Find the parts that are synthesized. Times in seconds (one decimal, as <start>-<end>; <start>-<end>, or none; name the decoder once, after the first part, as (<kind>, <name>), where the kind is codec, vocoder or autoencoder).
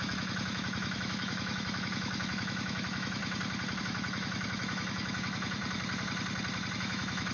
0.0-3.2 (autoencoder, DAC-VAE); 3.8-5.6; 6.7-7.3